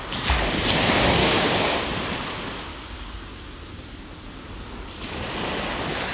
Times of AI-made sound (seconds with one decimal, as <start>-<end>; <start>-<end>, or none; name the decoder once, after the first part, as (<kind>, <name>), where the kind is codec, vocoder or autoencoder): 1.2-1.8 (codec, DAC); 2.7-3.5